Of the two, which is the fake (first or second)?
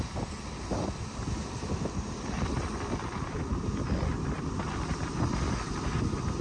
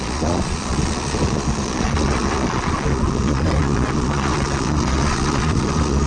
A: second